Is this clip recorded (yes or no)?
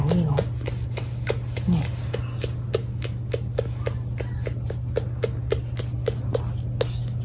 yes